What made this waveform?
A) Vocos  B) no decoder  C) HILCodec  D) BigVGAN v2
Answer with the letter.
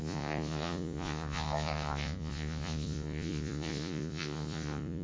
A